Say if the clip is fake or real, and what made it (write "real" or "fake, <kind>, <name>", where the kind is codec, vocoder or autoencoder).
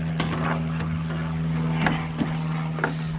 real